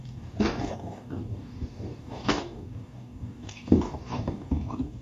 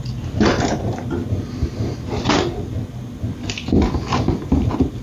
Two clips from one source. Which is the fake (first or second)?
first